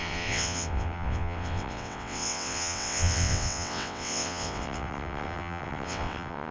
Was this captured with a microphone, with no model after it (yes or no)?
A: no